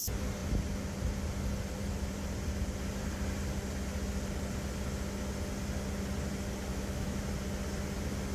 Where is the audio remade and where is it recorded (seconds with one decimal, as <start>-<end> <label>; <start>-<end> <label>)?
0.0-6.7 recorded; 6.7-7.2 remade; 7.2-8.3 recorded